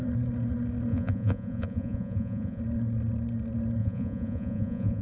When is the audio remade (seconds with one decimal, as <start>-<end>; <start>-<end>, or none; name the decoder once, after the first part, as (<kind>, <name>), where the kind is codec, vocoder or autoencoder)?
0.9-2.6 (vocoder, Vocos); 3.8-5.0